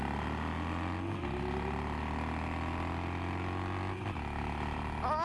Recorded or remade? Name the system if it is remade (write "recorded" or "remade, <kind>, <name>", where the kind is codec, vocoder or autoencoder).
recorded